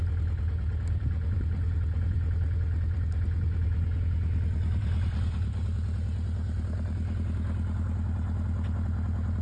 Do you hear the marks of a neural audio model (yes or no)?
no